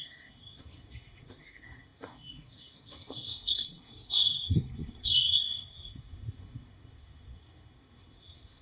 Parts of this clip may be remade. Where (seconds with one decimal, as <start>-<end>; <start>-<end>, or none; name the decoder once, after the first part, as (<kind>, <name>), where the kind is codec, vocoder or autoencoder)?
0.0-8.6 (codec, SNAC)